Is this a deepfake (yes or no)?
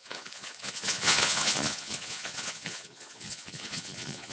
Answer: yes